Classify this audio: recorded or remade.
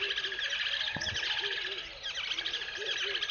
recorded